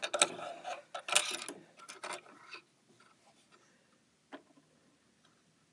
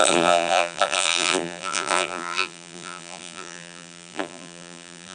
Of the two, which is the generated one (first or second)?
second